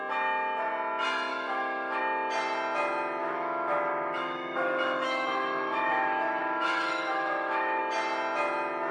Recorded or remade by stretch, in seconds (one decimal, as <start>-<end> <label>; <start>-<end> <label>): 0.0-1.3 recorded; 1.3-2.0 remade; 2.0-3.2 recorded; 3.2-7.8 remade; 7.8-8.9 recorded